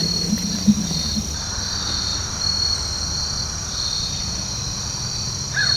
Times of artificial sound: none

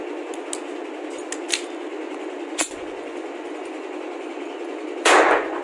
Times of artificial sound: 1.9-5.6 (vocoder, Vocos)

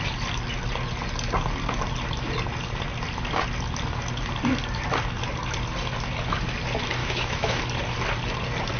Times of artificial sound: 7.0-7.6 (autoencoder, DAC-VAE)